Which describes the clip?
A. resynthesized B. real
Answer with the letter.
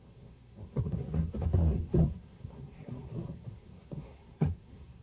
A